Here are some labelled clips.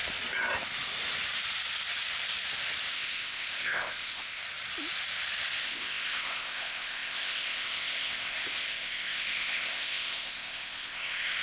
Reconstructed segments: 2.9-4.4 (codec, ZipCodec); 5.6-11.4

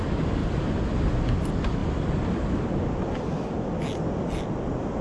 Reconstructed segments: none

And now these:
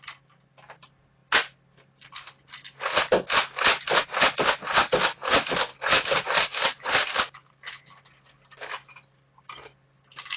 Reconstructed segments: none

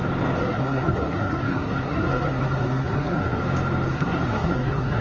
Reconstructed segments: 0.4-3.4 (codec, SNAC); 3.9-5.0

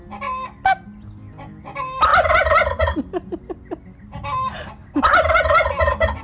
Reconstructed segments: 2.1-3.4 (vocoder, BigVGAN v2)

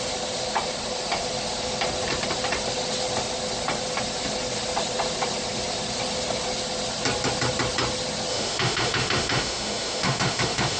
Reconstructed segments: 8.3-10.8 (autoencoder, DAC-VAE)